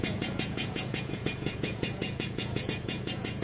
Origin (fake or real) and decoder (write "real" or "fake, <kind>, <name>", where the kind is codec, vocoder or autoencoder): fake, vocoder, Vocos